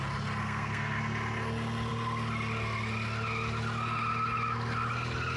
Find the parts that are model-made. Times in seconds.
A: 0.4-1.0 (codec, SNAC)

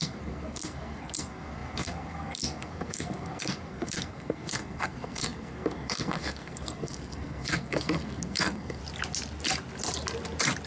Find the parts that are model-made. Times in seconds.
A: 0.0-8.8 (codec, SNAC)

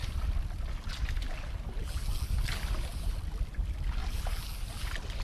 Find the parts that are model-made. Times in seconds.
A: none

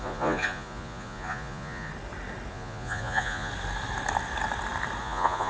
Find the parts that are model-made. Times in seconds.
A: 0.0-1.9 (vocoder, Vocos); 2.5-3.5; 5.0-5.5

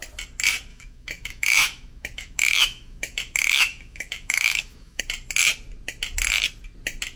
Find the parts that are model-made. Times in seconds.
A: 0.7-5.0 (autoencoder, DAC-VAE)

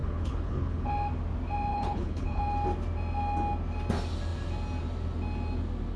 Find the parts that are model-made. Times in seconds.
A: 0.0-0.9 (codec, HILCodec); 1.7-2.4